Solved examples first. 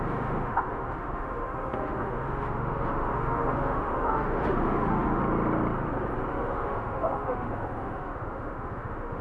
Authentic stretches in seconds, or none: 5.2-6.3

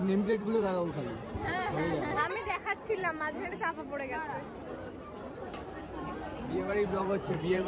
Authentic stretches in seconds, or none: 3.0-4.9; 5.8-6.5

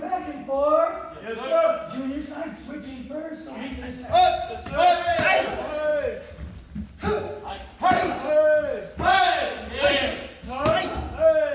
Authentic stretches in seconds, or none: 0.0-1.5; 3.3-11.5